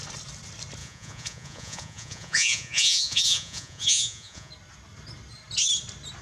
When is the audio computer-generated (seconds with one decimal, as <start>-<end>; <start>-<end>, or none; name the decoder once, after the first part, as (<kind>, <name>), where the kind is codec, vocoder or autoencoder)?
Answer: 0.8-4.5 (vocoder, Vocos)

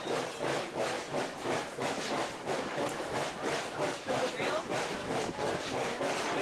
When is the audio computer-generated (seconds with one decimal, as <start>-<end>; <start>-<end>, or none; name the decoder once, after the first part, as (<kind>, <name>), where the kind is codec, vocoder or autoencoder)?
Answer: 0.5-4.3 (autoencoder, DAC-VAE); 5.0-6.0

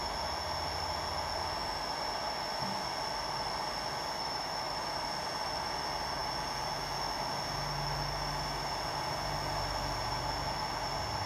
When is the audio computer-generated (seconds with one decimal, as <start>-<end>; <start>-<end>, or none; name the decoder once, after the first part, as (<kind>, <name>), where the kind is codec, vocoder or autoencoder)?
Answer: 4.2-4.8 (autoencoder, DAC-VAE)

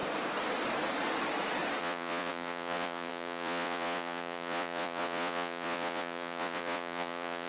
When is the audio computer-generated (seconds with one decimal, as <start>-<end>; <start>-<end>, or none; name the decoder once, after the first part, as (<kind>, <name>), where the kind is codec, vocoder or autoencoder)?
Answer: 1.8-7.5 (vocoder, Vocos)

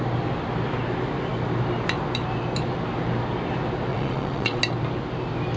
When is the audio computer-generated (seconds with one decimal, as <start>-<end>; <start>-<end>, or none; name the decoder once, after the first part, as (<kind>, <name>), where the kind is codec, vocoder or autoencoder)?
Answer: 3.9-4.6 (vocoder, WaveNeXt)

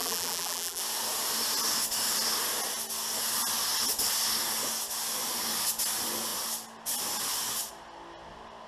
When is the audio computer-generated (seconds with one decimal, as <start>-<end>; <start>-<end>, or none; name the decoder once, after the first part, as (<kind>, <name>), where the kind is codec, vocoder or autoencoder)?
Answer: 0.0-0.8 (vocoder, BigVGAN v2)